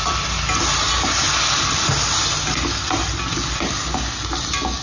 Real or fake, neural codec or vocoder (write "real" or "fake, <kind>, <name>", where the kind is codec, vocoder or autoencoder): real